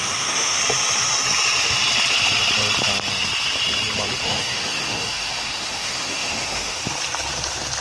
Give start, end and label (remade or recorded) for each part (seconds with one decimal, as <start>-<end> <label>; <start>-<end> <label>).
0.0-0.6 remade; 0.6-4.2 recorded; 4.2-6.8 remade; 6.8-7.8 recorded